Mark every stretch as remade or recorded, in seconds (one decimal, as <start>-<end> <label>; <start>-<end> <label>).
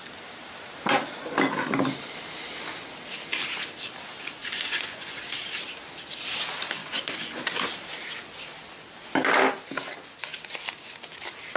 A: 0.0-4.4 recorded; 4.4-5.2 remade; 5.2-6.8 recorded; 6.8-7.4 remade; 7.4-11.6 recorded